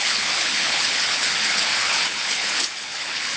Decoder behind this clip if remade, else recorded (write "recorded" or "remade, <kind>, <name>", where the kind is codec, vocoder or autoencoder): remade, codec, HILCodec